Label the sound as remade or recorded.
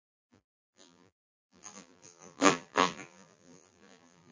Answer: remade